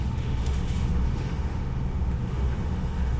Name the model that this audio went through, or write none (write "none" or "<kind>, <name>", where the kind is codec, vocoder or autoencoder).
autoencoder, DAC-VAE